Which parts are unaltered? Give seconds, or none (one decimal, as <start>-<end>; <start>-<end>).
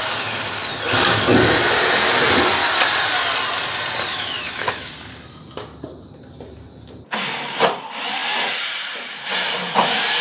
0.0-4.1; 4.9-10.2